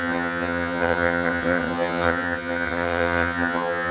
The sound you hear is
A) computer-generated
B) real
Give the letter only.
A